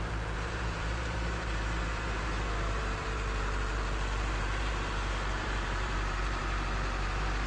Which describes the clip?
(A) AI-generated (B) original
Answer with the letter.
A